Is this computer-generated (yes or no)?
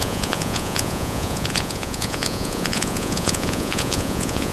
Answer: yes